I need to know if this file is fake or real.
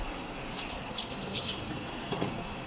fake